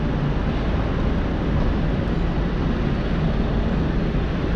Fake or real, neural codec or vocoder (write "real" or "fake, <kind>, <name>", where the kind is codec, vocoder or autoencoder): real